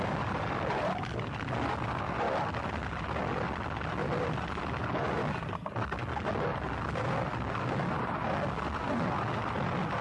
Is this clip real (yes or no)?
yes